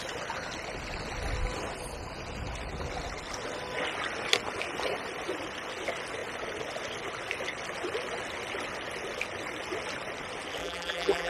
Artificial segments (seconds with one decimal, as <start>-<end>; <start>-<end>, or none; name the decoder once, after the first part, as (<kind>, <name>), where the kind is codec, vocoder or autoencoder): 10.6-11.3 (vocoder, BigVGAN v2)